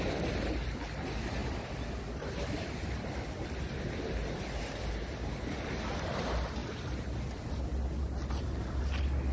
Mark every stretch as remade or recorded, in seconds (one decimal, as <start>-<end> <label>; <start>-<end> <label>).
0.0-9.3 recorded